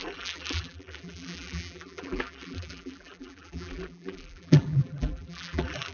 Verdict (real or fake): fake